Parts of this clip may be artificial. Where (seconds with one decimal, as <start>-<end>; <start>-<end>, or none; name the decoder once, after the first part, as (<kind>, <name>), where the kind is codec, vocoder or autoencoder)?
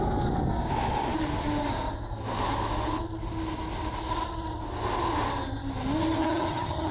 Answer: 6.2-6.9 (vocoder, HiFi-GAN)